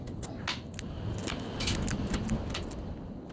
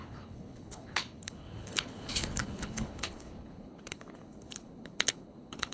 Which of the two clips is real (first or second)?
first